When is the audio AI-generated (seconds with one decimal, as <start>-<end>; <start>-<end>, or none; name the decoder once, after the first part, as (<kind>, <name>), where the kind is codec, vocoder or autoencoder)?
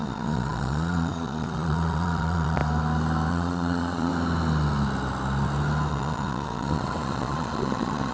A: 0.0-2.6 (vocoder, Vocos); 3.3-4.1; 5.9-8.1